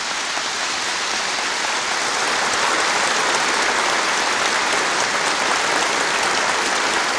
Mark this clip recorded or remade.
recorded